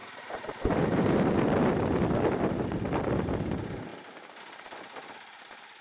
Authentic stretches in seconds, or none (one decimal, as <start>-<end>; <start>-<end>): 1.4-5.8